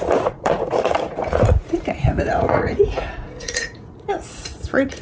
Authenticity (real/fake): fake